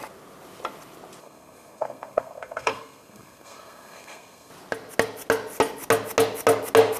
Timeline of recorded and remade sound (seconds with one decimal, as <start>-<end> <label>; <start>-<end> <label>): 0.0-1.2 recorded; 1.2-4.5 remade; 4.5-7.0 recorded